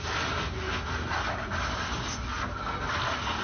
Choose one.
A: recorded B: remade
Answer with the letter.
A